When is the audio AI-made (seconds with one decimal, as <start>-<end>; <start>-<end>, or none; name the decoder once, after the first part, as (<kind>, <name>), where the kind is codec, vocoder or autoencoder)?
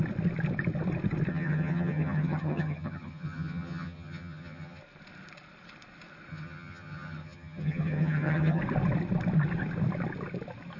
1.3-4.8 (vocoder, HiFi-GAN); 6.3-8.6